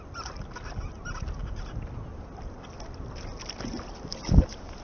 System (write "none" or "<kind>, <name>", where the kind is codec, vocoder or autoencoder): none